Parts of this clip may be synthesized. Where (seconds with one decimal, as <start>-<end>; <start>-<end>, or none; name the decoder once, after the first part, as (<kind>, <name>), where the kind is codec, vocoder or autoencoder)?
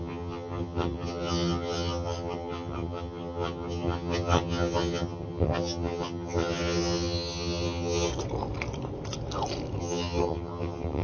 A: 0.0-8.1 (vocoder, HiFi-GAN); 9.8-11.0